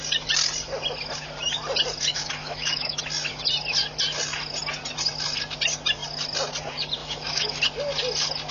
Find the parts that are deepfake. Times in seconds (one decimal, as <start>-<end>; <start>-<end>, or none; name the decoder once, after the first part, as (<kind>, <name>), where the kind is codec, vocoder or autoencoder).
2.1-3.0 (autoencoder, DAC-VAE); 7.0-7.6